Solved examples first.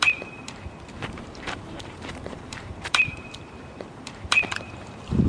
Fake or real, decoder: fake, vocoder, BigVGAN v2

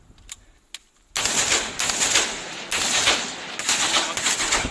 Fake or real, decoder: real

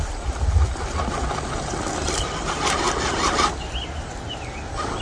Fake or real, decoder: real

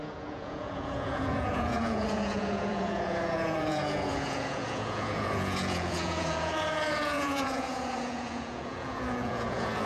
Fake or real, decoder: fake, vocoder, Vocos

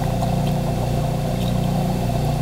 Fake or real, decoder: real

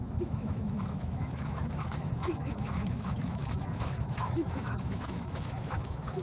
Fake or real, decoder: fake, autoencoder, DAC-VAE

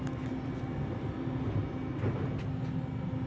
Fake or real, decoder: real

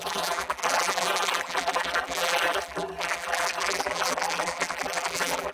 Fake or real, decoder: fake, vocoder, BigVGAN v2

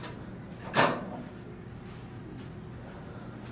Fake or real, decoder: real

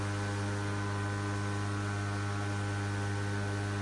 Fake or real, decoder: real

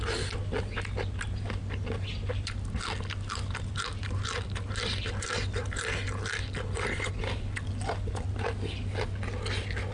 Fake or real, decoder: real